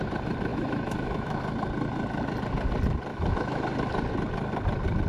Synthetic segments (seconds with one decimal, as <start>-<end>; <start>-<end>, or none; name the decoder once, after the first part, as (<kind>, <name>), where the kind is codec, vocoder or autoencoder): 0.5-1.4 (autoencoder, DAC-VAE); 3.1-3.6